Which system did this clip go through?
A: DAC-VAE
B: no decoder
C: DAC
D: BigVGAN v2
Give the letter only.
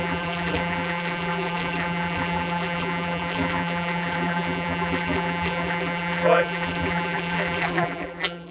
D